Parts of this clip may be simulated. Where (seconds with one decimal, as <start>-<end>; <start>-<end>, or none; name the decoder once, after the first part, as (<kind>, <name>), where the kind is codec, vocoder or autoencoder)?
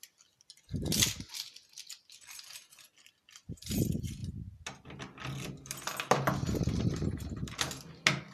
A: none